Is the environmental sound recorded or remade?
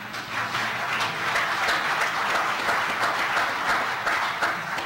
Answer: recorded